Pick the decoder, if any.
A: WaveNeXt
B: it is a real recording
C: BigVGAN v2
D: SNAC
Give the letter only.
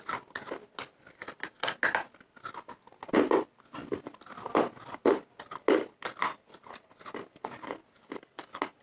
B